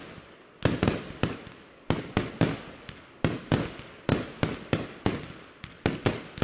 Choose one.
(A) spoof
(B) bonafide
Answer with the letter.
B